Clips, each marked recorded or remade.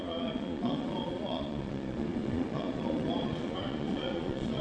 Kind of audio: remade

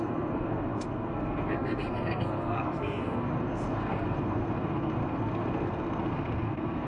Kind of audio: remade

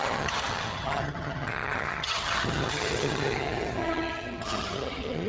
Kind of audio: remade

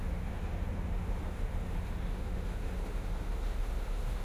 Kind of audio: remade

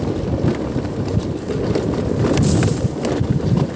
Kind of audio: recorded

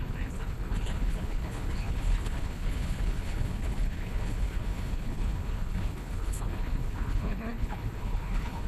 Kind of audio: remade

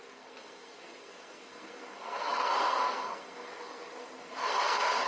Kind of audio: remade